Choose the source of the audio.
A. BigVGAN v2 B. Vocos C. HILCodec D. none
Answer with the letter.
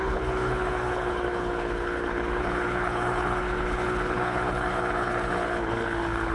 C